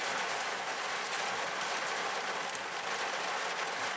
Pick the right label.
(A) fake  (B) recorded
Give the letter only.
B